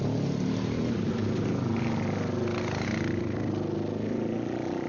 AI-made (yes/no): no